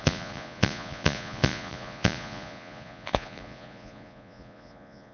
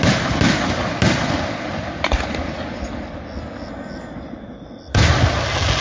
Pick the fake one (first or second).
first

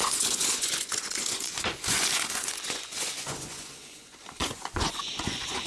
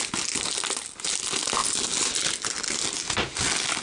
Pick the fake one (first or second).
first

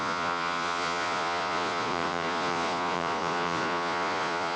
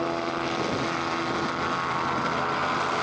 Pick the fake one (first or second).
first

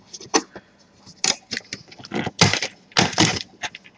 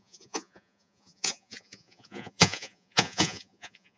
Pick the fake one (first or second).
second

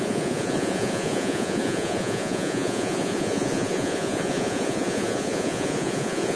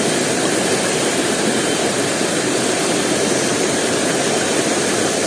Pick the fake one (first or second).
first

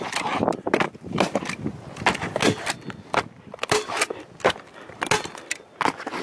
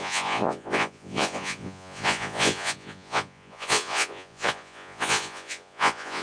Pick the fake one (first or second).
second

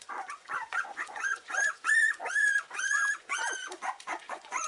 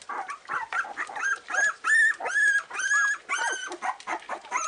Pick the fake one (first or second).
first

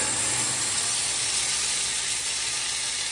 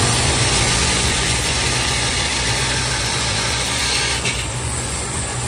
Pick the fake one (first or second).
second